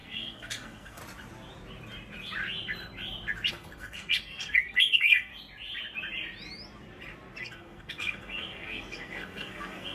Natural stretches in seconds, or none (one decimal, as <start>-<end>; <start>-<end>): 1.0-3.5; 5.3-7.4